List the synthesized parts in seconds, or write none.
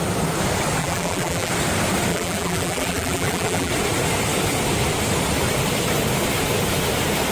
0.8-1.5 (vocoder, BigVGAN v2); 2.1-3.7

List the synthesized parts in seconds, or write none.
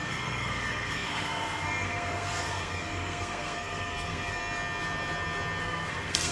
0.0-4.4 (codec, SNAC); 5.6-6.3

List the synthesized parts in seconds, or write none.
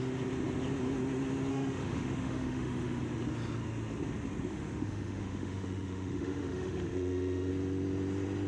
1.5-3.0 (autoencoder, DAC-VAE); 4.5-7.5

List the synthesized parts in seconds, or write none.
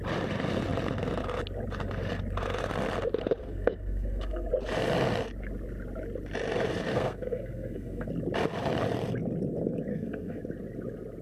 3.4-4.5 (codec, SNAC); 6.9-8.1; 9.9-10.4